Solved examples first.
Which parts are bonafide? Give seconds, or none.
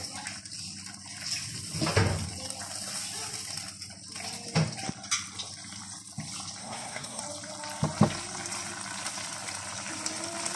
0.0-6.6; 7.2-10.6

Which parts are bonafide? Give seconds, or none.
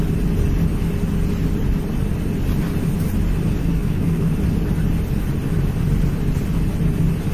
0.0-3.6; 4.3-7.3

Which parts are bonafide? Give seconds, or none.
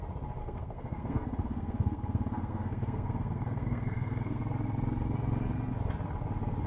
0.0-0.4; 4.4-6.7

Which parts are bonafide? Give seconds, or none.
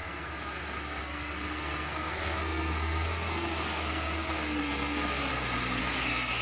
5.3-5.8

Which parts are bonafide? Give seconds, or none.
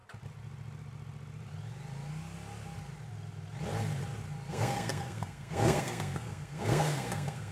0.0-4.5